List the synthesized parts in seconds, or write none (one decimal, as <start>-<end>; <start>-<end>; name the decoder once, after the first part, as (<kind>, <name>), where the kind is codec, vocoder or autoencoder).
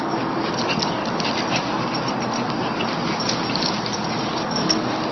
0.0-1.0 (codec, DAC); 4.1-5.1